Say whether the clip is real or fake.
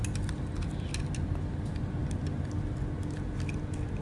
real